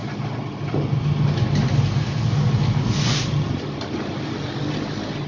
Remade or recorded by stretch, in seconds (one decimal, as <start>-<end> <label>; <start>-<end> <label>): 0.0-5.3 recorded